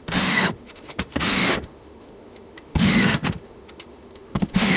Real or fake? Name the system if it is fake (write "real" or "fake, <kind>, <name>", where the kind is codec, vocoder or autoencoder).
fake, autoencoder, DAC-VAE